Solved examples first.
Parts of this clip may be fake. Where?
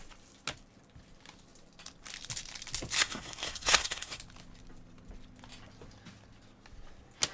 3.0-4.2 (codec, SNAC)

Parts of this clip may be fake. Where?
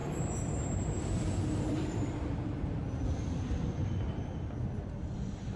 0.0-2.8 (vocoder, BigVGAN v2)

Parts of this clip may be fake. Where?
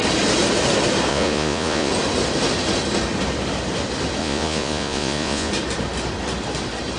1.1-1.9 (vocoder, Vocos); 4.2-5.5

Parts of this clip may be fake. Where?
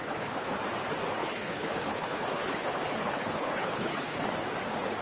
0.0-0.6 (codec, HILCodec); 1.2-4.2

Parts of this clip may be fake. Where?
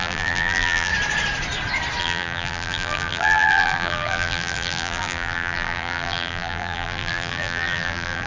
0.0-0.9 (vocoder, BigVGAN v2); 2.0-8.3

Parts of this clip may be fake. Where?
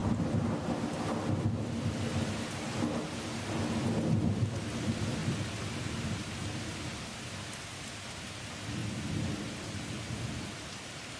none